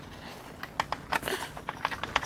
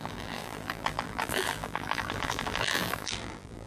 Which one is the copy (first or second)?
second